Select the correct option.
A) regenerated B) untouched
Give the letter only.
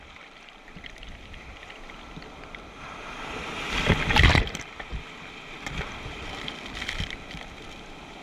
A